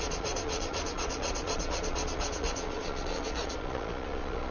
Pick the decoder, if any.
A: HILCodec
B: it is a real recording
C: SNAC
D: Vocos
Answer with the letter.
D